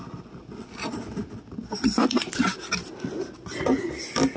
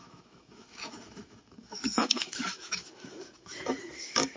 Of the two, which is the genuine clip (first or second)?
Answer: first